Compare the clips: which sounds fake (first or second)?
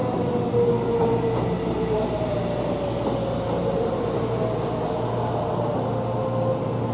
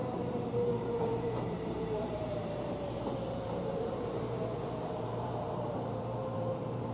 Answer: second